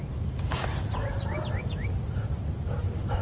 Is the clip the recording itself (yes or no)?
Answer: yes